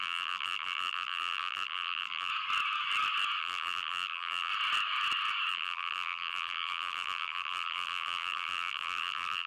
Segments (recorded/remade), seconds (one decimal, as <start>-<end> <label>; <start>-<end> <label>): 0.0-2.3 remade; 2.3-3.4 recorded; 3.4-4.5 remade; 4.5-5.5 recorded; 5.5-9.5 remade